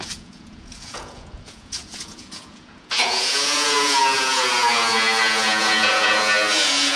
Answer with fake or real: fake